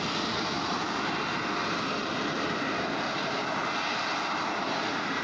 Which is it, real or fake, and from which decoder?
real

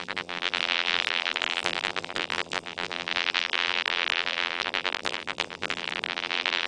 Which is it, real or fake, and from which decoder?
fake, vocoder, BigVGAN v2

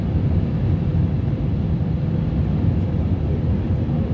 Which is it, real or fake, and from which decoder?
real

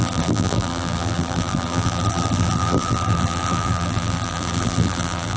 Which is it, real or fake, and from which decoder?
fake, vocoder, BigVGAN v2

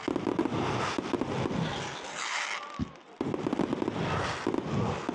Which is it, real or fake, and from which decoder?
real